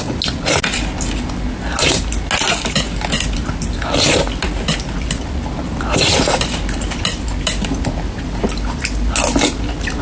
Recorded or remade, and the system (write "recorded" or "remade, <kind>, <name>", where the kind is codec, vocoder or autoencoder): recorded